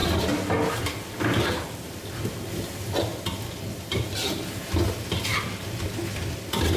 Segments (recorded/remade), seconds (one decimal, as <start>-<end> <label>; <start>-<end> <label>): 0.0-6.8 recorded